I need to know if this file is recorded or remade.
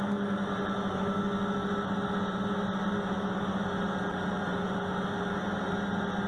recorded